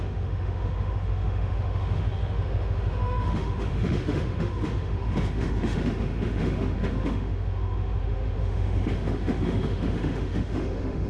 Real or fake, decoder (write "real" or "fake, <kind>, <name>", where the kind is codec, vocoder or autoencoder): fake, autoencoder, DAC-VAE